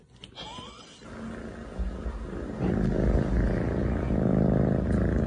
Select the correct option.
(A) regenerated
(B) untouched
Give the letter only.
B